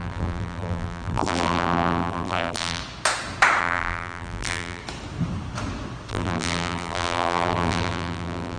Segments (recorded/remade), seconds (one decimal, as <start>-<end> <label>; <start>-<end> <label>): 0.0-2.8 remade; 2.8-3.6 recorded; 3.6-4.8 remade; 4.8-6.1 recorded; 6.1-8.6 remade